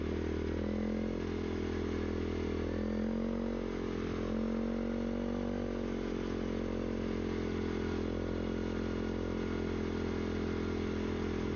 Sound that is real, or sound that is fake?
real